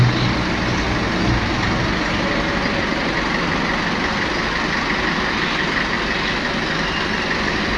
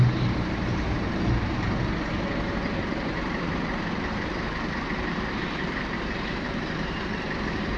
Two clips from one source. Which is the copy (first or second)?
second